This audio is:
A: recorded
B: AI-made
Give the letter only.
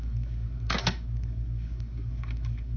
B